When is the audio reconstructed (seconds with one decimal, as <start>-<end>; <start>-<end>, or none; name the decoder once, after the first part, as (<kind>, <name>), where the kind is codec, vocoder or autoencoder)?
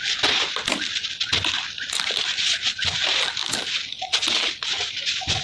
none